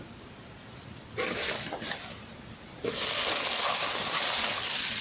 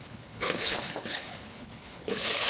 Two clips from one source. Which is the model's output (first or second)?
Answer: second